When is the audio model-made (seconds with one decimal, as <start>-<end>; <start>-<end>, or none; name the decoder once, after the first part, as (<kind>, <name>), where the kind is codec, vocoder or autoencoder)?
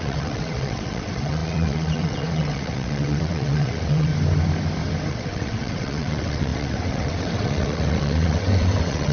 0.0-4.1 (vocoder, WaveNeXt); 5.1-9.1